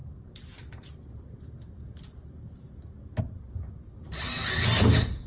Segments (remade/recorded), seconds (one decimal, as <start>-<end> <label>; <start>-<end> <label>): 0.0-5.3 recorded